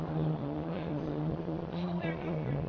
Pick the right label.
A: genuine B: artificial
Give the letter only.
B